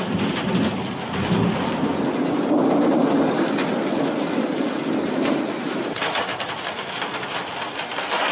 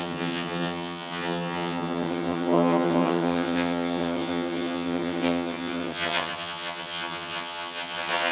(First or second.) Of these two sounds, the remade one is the second